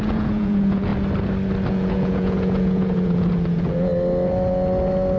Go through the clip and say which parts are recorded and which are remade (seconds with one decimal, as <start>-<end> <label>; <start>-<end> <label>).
0.0-0.9 remade; 0.9-1.7 recorded; 1.7-3.9 remade; 3.9-5.2 recorded